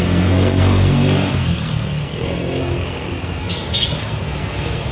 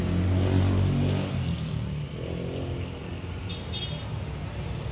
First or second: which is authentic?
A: second